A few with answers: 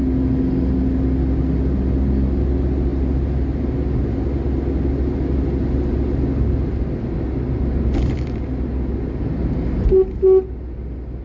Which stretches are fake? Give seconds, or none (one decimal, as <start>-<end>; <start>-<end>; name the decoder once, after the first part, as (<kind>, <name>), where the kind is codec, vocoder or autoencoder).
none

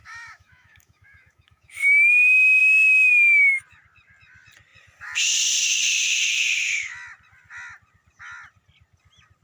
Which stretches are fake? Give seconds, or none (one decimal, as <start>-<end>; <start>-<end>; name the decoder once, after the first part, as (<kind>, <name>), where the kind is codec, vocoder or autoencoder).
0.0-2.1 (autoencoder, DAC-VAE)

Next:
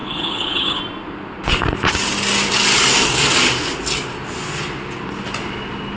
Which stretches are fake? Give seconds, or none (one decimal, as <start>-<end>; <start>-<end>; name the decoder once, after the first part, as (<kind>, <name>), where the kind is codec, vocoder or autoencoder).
0.0-0.8 (codec, HILCodec)